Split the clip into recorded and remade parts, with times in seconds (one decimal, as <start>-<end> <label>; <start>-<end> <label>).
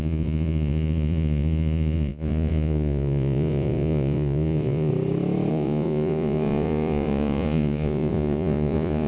0.0-4.9 remade; 4.9-5.5 recorded; 5.5-9.1 remade